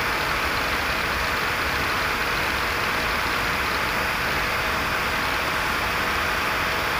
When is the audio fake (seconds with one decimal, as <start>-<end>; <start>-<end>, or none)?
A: none